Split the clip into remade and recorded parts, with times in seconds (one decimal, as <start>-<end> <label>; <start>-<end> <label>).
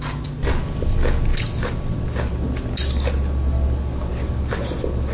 0.0-5.1 recorded